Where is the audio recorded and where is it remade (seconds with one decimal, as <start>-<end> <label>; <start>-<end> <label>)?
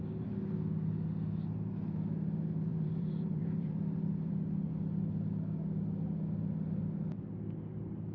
0.0-2.7 recorded; 2.7-4.3 remade; 4.3-8.1 recorded